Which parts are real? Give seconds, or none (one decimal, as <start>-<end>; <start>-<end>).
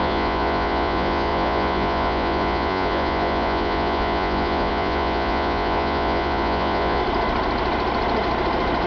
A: 7.0-8.9